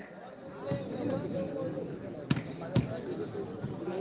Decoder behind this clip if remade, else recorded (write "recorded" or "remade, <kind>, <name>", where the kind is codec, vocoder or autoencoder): recorded